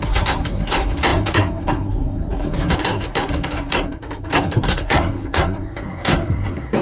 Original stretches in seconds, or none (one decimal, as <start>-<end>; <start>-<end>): none